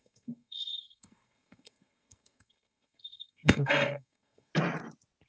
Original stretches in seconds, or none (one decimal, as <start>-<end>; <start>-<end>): 4.5-5.3